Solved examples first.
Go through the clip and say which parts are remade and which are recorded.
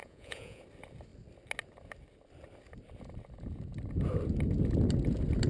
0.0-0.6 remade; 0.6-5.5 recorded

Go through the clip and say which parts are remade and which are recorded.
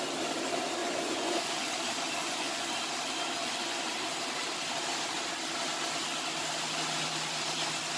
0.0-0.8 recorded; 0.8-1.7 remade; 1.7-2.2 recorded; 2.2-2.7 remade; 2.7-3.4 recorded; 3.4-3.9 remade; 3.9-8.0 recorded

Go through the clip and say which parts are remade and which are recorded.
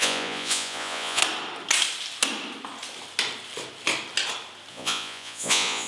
0.0-1.2 remade; 1.2-4.7 recorded; 4.7-5.9 remade